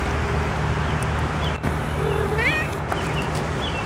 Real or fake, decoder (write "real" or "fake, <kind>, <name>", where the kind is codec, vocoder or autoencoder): real